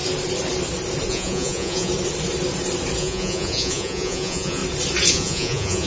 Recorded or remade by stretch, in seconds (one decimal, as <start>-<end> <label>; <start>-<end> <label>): 0.0-1.1 recorded; 1.1-1.9 remade; 1.9-3.0 recorded; 3.0-4.6 remade; 4.6-5.1 recorded; 5.1-5.9 remade